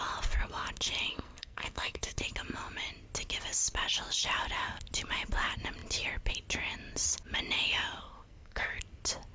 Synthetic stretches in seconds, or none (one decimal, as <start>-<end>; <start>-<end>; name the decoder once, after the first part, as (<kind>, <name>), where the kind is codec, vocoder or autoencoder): 1.1-2.2 (codec, SNAC); 8.0-8.7